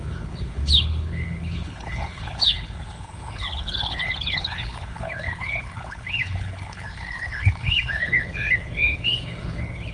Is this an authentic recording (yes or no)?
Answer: no